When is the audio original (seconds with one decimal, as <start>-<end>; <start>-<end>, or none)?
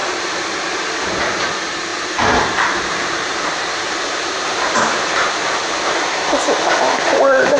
1.1-1.9; 6.3-7.6